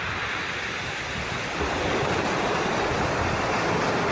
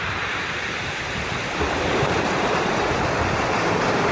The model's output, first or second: second